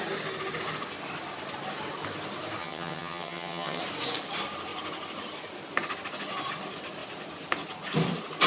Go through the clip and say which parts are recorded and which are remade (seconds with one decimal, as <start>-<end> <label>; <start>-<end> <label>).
0.0-2.6 recorded; 2.6-3.8 remade; 3.8-8.5 recorded